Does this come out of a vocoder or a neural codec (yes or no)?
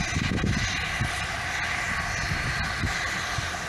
no